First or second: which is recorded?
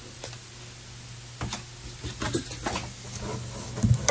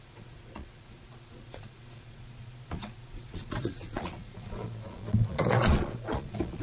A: first